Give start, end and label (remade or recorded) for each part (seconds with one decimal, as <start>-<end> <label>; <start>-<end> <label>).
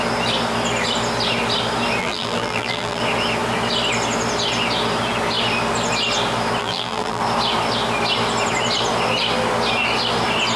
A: 0.0-2.0 recorded; 2.0-3.0 remade; 3.0-6.6 recorded; 6.6-7.2 remade; 7.2-10.6 recorded